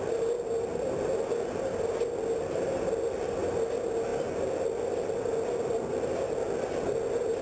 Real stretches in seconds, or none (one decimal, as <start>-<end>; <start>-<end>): 0.0-7.4